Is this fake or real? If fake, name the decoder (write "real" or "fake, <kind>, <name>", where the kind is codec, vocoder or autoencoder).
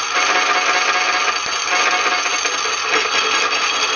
real